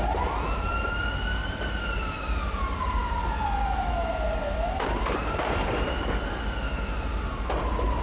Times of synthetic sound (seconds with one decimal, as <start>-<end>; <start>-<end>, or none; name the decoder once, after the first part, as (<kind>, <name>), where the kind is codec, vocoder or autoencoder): none